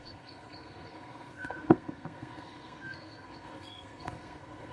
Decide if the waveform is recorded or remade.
remade